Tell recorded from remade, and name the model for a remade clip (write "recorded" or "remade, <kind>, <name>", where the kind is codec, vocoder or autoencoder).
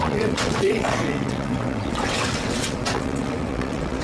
remade, vocoder, WaveNeXt